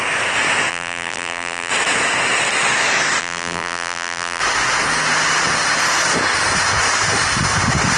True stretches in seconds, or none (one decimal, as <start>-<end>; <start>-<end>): 0.0-0.7; 1.7-3.2; 4.4-8.0